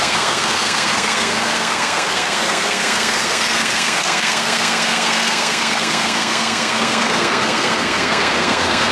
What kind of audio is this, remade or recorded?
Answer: remade